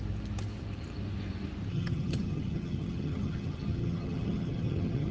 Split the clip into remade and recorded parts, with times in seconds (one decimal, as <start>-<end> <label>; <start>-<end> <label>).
0.0-1.7 recorded; 1.7-5.1 remade